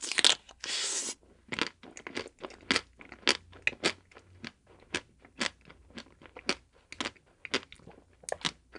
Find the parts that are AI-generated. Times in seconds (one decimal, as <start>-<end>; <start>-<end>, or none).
0.4-1.0